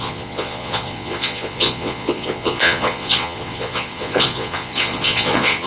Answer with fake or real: fake